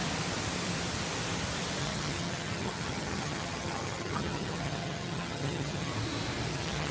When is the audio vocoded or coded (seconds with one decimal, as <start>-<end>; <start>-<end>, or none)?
1.8-5.9; 6.5-6.9